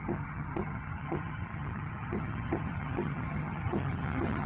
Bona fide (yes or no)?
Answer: no